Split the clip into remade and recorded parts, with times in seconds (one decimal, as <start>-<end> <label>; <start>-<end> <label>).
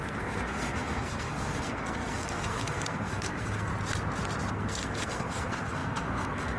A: 0.0-3.7 remade; 3.7-4.5 recorded; 4.5-6.6 remade